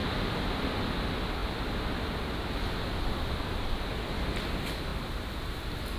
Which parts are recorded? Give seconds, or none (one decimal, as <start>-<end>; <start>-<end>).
0.0-6.0